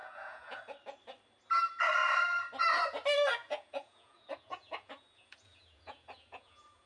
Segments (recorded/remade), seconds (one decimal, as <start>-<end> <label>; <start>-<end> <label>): 0.0-0.6 remade; 0.6-3.4 recorded; 3.4-6.9 remade